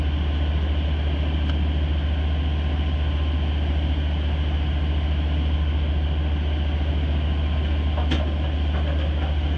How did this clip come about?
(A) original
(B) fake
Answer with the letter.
A